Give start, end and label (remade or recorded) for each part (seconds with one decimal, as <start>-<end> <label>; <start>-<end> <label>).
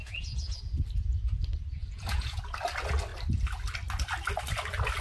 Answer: 0.0-0.6 remade; 0.6-1.8 recorded; 1.8-2.4 remade; 2.4-5.0 recorded